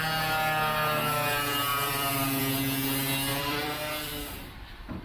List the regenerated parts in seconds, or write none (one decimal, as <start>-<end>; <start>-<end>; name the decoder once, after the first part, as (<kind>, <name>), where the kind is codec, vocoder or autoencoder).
1.7-2.4 (vocoder, BigVGAN v2); 3.3-5.0